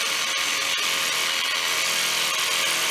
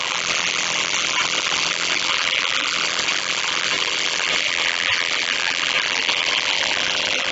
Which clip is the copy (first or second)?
second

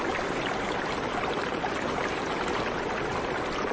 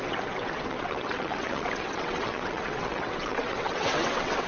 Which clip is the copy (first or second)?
second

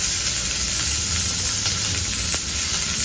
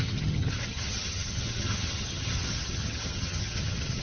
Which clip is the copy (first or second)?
second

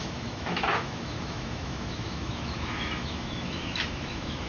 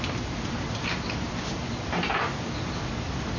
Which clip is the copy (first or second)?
first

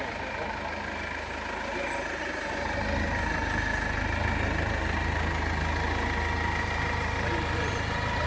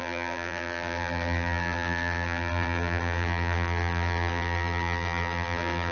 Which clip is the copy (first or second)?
second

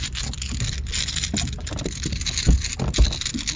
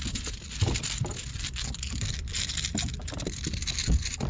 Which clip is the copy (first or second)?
second